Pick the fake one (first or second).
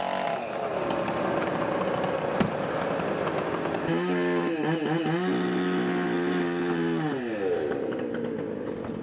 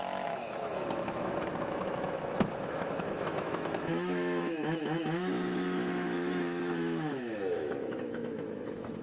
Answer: second